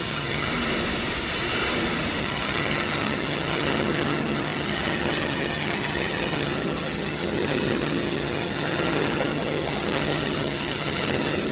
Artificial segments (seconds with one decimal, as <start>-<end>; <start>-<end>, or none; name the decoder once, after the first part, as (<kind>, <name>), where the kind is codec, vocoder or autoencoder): 0.0-0.5 (vocoder, HiFi-GAN); 2.2-11.5